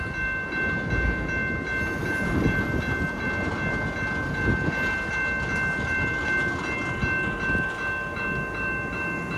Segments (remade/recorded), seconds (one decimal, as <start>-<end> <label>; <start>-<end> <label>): 0.0-9.4 recorded